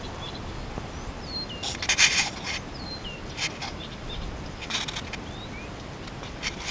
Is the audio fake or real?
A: real